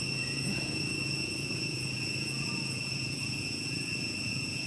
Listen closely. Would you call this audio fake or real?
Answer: fake